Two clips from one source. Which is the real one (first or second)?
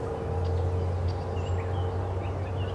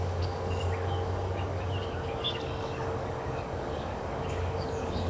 first